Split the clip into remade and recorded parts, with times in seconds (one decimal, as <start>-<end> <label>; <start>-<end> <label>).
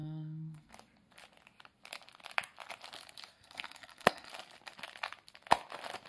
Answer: 0.0-0.7 remade; 0.7-3.3 recorded; 3.3-4.3 remade; 4.3-6.1 recorded